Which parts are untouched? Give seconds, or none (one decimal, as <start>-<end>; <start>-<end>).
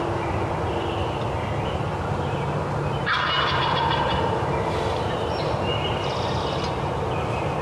0.0-1.9; 6.4-7.6